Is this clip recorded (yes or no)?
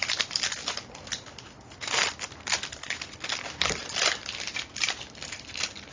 yes